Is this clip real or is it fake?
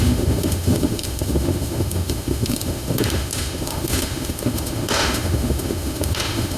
fake